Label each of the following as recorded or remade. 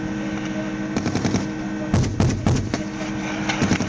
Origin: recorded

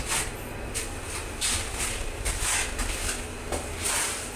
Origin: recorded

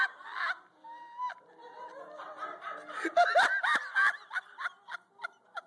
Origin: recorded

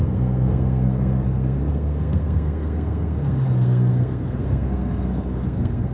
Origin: remade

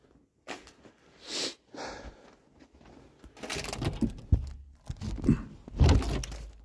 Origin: recorded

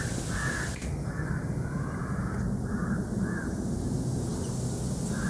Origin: recorded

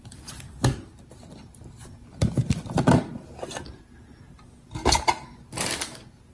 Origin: recorded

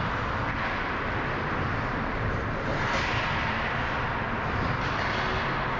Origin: recorded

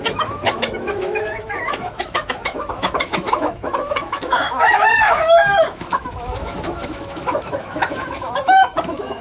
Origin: remade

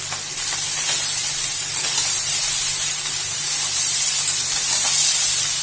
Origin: recorded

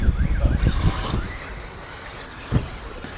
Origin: recorded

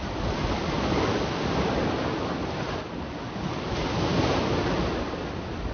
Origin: recorded